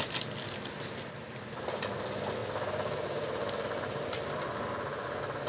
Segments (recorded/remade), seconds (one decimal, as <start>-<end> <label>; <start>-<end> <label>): 0.0-5.5 recorded